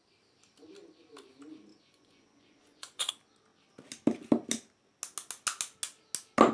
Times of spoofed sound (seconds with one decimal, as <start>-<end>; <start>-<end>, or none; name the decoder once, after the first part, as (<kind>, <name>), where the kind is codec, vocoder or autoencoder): 1.7-3.1 (vocoder, Vocos)